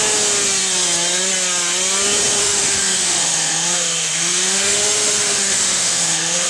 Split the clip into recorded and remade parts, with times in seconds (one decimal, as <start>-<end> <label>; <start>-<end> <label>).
0.0-2.4 recorded; 2.4-6.5 remade